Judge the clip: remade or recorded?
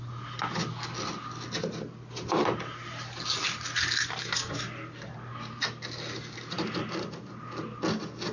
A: recorded